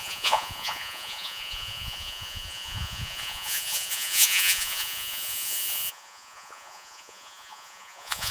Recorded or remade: remade